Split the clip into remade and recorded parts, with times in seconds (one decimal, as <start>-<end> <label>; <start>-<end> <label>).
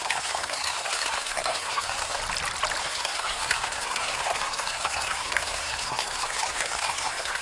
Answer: 0.0-2.2 remade; 2.2-2.8 recorded; 2.8-7.4 remade